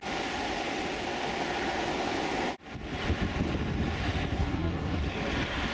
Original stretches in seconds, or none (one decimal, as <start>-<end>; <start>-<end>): 0.0-4.4; 5.0-5.7